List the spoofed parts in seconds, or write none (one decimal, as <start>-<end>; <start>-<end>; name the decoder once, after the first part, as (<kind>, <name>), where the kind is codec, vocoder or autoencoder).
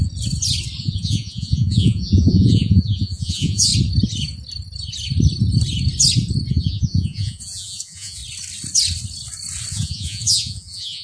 0.8-3.7 (vocoder, Vocos); 6.5-8.2; 9.7-11.0